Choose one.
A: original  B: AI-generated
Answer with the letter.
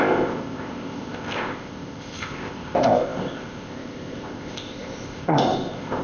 B